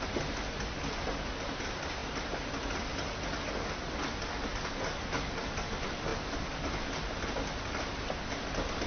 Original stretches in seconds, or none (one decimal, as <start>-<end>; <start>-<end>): 0.0-2.0; 2.5-4.5; 5.4-8.9